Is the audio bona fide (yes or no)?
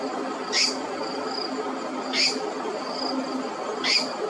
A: yes